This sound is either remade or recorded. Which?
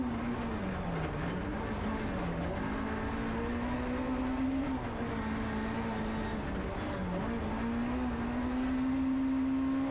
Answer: recorded